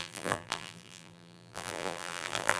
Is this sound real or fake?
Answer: fake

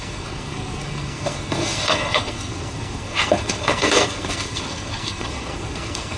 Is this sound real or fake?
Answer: fake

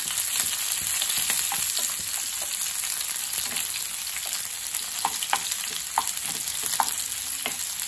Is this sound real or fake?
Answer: real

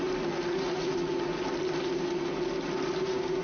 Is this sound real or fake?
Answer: real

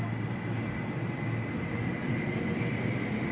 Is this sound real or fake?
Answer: real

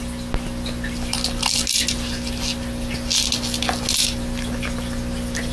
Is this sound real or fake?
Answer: real